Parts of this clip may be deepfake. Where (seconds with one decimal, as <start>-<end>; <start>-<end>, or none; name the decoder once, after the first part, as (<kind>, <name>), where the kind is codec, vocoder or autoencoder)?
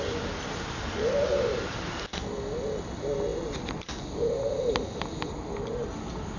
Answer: none